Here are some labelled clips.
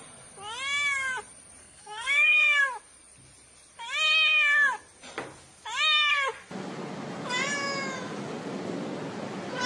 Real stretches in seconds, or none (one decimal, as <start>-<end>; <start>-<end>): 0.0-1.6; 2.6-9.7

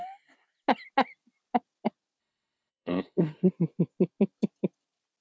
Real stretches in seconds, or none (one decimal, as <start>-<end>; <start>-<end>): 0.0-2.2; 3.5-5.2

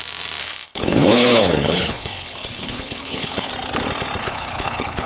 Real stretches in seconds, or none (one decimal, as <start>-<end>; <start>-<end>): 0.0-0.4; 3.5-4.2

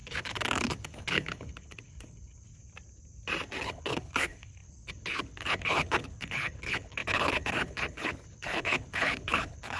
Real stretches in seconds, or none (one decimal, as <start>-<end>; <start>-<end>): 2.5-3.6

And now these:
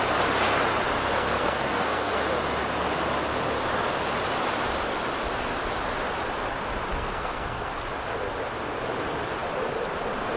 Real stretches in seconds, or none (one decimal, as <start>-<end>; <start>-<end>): 0.0-1.0; 2.2-6.9; 7.7-10.4